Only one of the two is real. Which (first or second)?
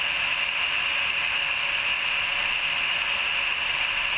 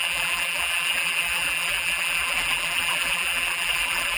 first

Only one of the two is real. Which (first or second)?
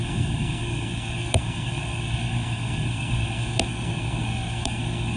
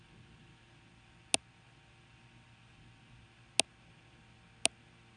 second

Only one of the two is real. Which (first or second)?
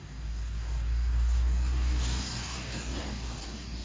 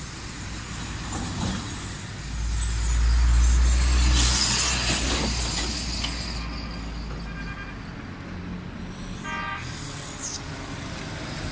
second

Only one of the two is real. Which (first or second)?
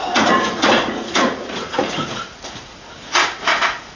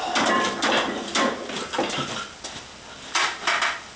second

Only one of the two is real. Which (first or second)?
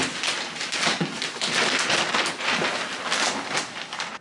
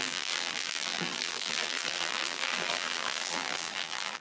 first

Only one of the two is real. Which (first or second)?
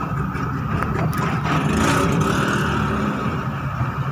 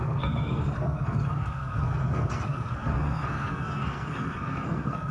first